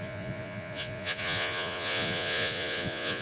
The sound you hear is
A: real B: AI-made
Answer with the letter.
B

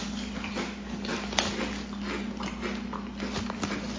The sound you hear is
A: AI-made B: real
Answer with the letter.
B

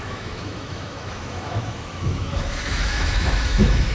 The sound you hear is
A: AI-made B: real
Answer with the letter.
A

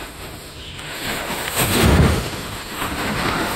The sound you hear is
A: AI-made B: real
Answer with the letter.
A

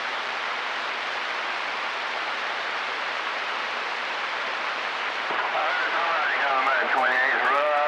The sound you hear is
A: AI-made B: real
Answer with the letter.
A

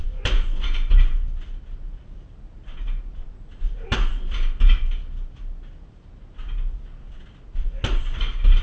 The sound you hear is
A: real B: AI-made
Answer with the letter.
A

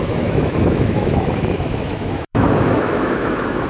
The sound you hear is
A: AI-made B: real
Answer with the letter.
A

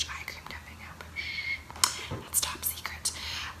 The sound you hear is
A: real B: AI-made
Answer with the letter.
A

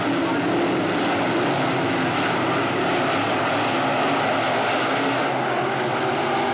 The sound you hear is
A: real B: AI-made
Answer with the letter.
A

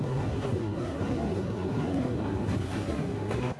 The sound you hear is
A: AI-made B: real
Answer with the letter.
A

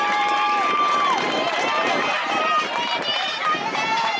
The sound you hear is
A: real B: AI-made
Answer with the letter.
B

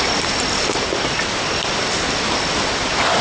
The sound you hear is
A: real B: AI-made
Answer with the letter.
A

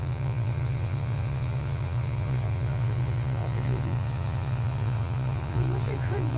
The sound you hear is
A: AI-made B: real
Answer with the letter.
A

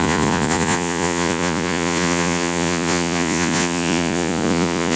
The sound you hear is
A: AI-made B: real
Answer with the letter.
A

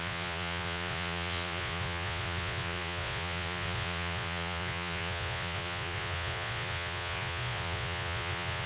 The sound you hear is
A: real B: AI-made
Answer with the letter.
B